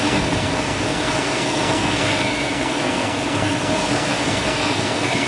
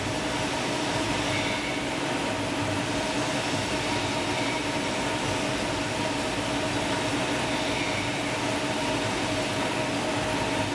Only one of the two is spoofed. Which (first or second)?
first